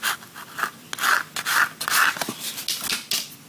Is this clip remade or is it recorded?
recorded